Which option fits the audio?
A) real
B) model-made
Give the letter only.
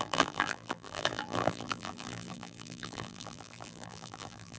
B